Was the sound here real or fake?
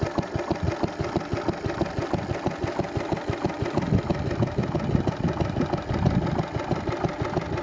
real